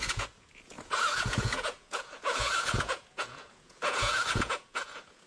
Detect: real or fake fake